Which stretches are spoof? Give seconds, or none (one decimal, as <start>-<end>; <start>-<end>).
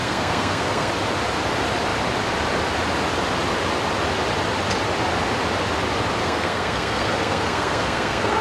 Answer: 0.0-0.9; 6.2-8.4